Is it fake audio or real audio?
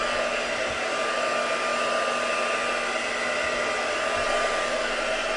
real